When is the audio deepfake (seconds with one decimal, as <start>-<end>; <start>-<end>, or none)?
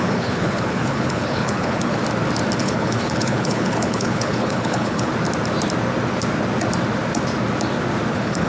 0.0-2.0; 2.6-5.1; 8.1-8.5